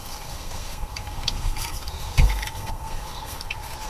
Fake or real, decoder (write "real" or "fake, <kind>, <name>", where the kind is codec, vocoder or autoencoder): fake, codec, SNAC